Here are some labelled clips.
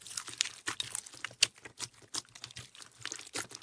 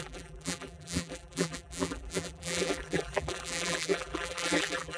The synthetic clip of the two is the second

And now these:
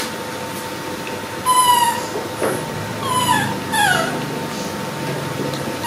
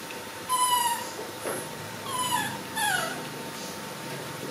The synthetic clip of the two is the second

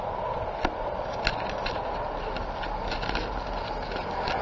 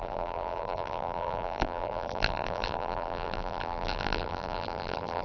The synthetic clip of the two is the second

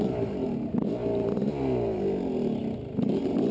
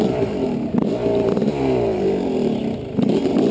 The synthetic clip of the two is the second